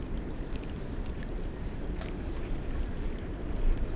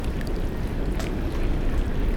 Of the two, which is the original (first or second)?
second